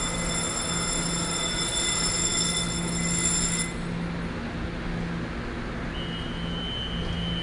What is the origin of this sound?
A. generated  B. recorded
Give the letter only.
B